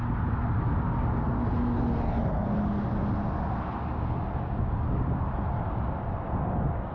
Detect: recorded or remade recorded